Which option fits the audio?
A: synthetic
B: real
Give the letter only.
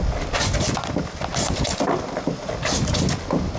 B